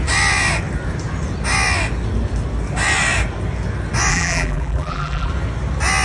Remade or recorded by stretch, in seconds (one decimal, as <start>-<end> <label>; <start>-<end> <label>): 0.0-4.1 recorded; 4.1-5.3 remade; 5.3-6.0 recorded